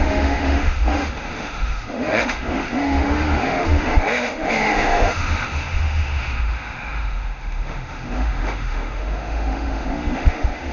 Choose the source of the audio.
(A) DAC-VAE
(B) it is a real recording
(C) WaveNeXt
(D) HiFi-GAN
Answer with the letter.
A